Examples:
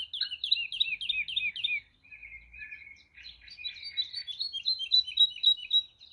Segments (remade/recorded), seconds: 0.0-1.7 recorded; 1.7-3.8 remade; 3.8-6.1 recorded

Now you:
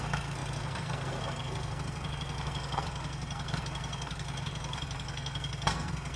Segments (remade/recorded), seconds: 0.0-6.2 remade

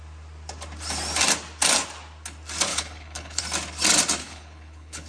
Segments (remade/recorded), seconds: 0.0-2.7 recorded; 2.7-3.4 remade; 3.4-4.2 recorded; 4.2-5.1 remade

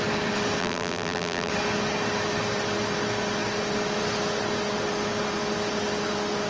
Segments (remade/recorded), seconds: 0.0-0.6 recorded; 0.6-1.5 remade; 1.5-6.5 recorded